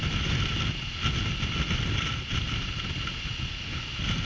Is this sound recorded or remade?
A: recorded